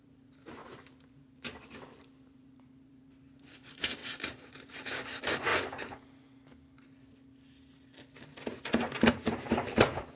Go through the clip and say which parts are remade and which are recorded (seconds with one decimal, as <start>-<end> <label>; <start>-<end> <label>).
0.0-5.5 remade; 5.5-9.1 recorded; 9.1-10.2 remade